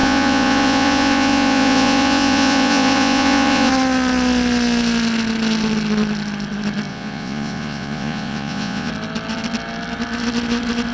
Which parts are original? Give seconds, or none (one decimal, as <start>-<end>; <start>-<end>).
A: 3.7-6.9; 8.9-10.9